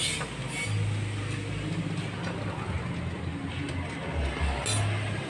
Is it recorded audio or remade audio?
recorded